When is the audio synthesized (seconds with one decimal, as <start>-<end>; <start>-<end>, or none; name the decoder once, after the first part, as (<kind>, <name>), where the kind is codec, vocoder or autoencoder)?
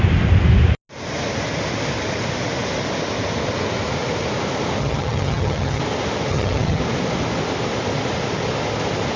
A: 4.8-5.8 (vocoder, HiFi-GAN); 6.3-6.8